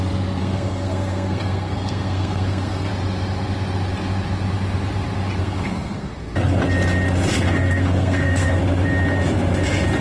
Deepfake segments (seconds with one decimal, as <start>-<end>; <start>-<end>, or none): 0.4-2.9; 5.4-6.1; 7.3-8.6